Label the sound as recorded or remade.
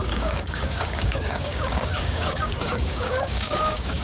remade